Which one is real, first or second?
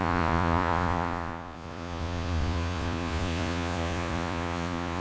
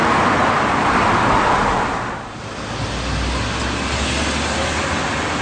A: second